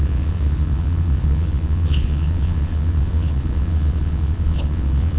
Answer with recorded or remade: remade